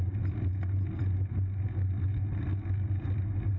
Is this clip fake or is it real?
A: real